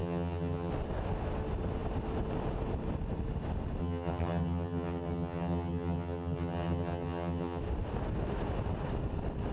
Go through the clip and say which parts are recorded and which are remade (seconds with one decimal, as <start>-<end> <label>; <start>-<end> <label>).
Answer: 0.0-0.7 remade; 0.7-3.8 recorded; 3.8-7.6 remade; 7.6-9.5 recorded